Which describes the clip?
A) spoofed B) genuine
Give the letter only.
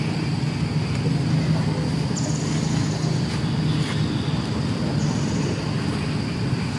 B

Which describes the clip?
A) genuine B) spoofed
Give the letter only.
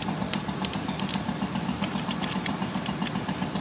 B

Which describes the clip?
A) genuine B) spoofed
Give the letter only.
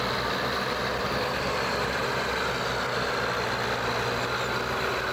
A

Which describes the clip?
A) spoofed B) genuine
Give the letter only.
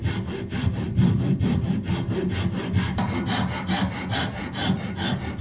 B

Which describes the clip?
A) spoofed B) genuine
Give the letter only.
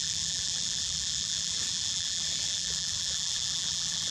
A